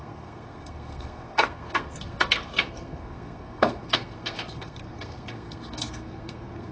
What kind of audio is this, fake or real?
fake